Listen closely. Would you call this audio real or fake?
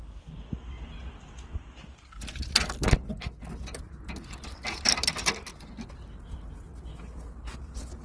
real